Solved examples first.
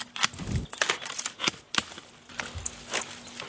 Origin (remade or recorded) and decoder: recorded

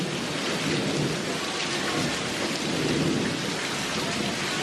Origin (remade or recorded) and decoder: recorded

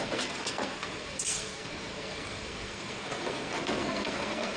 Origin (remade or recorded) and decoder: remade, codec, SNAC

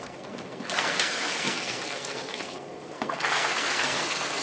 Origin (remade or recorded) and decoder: remade, codec, SNAC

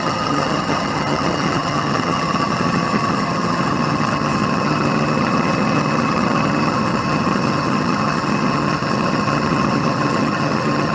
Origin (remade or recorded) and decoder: remade, vocoder, HiFi-GAN